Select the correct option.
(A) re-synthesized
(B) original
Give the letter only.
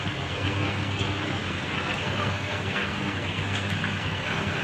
A